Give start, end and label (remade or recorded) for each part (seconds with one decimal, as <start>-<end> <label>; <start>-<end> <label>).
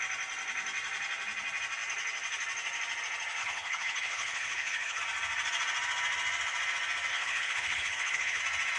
0.0-3.4 recorded; 3.4-5.0 remade; 5.0-7.1 recorded; 7.1-8.4 remade; 8.4-8.8 recorded